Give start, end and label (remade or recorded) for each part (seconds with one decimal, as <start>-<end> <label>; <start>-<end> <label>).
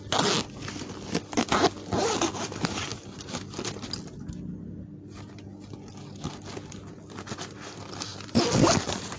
0.0-9.2 recorded